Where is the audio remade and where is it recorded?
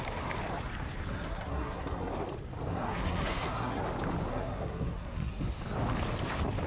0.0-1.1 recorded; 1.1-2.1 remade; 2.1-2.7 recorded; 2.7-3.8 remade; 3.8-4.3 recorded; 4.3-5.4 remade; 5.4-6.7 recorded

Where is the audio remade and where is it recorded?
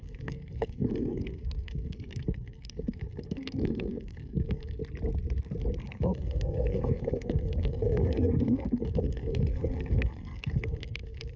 0.0-4.8 remade; 4.8-5.8 recorded; 5.8-11.4 remade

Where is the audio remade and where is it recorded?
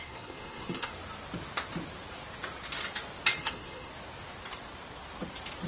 0.0-0.9 remade; 0.9-3.4 recorded; 3.4-3.9 remade; 3.9-5.7 recorded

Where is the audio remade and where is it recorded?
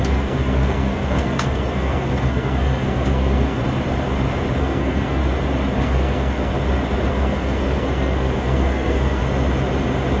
0.0-3.6 remade; 3.6-4.6 recorded; 4.6-5.2 remade; 5.2-5.8 recorded; 5.8-6.5 remade; 6.5-7.1 recorded; 7.1-9.2 remade; 9.2-10.2 recorded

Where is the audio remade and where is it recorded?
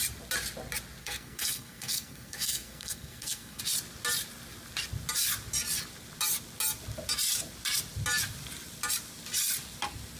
0.0-1.0 recorded; 1.0-3.6 remade; 3.6-10.2 recorded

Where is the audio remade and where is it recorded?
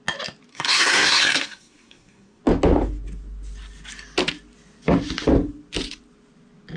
0.0-0.5 recorded; 0.5-2.4 remade; 2.4-6.8 recorded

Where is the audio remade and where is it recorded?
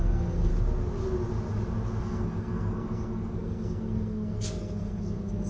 0.0-0.5 remade; 0.5-2.0 recorded; 2.0-5.5 remade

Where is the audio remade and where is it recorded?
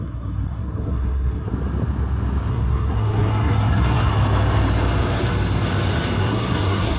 0.0-1.5 remade; 1.5-2.5 recorded; 2.5-4.1 remade; 4.1-6.2 recorded; 6.2-7.0 remade